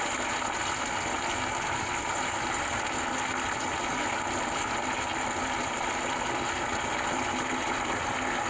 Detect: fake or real real